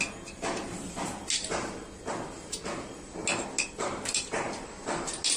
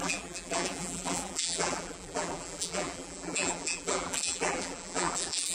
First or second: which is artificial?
second